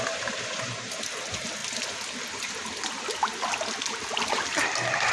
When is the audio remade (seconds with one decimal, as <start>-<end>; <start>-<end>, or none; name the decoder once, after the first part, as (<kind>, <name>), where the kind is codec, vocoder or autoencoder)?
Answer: 0.0-1.6 (vocoder, BigVGAN v2); 3.8-5.1